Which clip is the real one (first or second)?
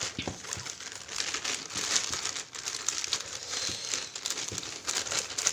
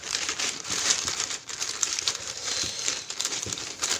first